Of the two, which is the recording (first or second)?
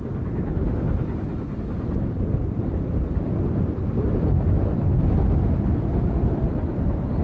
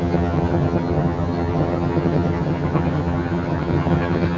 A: first